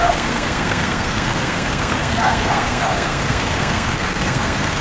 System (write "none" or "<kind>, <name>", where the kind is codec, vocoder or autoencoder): codec, SNAC